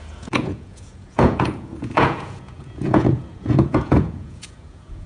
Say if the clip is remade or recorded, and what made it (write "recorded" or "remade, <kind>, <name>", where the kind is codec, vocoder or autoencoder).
remade, vocoder, Vocos